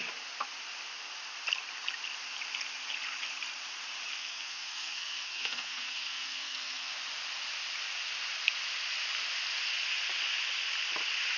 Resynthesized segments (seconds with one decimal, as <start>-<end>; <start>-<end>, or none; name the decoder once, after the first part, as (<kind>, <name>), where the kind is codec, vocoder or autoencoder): 4.2-6.9 (codec, SNAC)